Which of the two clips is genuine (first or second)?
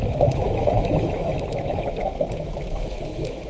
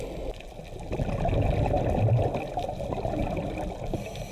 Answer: second